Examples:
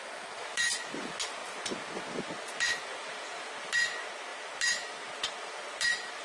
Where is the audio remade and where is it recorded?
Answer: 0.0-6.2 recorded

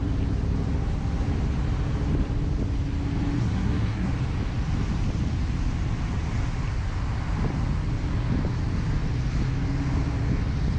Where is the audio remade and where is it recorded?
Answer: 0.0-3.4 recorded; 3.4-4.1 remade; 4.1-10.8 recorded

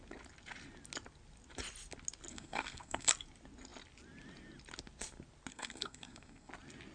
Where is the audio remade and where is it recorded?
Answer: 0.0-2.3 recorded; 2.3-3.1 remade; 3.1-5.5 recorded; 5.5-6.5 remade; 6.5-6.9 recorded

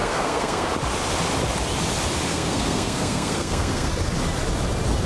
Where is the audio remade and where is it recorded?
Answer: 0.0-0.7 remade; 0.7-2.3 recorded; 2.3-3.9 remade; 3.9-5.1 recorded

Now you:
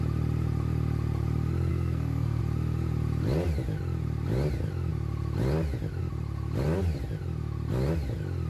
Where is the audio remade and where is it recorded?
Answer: 0.0-1.7 recorded; 1.7-2.4 remade; 2.4-8.5 recorded

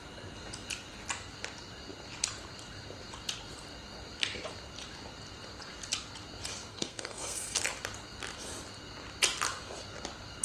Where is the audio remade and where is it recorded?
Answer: 0.0-6.7 recorded; 6.7-7.6 remade; 7.6-10.4 recorded

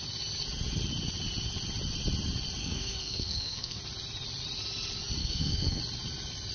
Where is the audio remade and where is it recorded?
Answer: 0.0-2.6 recorded; 2.6-3.8 remade; 3.8-5.2 recorded; 5.2-5.8 remade; 5.8-6.5 recorded

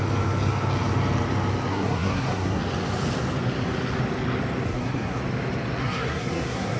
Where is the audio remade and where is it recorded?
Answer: 0.0-1.7 recorded; 1.7-2.6 remade; 2.6-4.7 recorded; 4.7-5.2 remade; 5.2-5.8 recorded; 5.8-6.8 remade